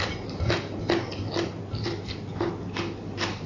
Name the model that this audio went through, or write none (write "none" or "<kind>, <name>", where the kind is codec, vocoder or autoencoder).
none